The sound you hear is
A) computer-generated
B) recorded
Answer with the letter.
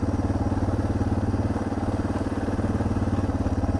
B